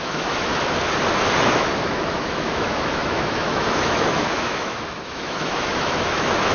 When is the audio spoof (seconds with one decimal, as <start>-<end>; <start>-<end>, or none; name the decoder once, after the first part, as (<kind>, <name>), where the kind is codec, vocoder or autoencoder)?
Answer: 0.0-0.5 (autoencoder, DAC-VAE); 1.4-6.5